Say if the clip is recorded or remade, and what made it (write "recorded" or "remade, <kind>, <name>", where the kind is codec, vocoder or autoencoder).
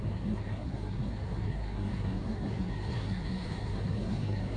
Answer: remade, codec, SNAC